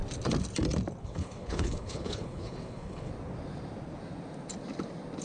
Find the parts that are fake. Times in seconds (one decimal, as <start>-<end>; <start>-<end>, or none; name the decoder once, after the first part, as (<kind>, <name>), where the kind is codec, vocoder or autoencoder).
1.0-3.1 (codec, HILCodec)